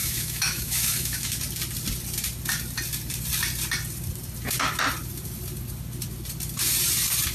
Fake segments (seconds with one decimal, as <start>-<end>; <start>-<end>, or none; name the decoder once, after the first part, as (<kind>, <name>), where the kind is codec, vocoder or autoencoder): 0.0-1.4 (autoencoder, DAC-VAE)